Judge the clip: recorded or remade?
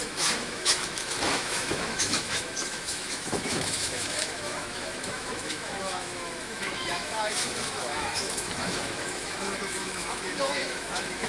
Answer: remade